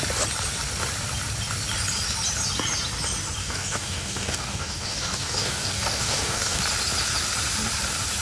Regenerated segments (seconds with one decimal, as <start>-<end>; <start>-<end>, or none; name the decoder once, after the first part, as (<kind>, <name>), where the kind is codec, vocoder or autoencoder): 3.4-6.6 (codec, DAC)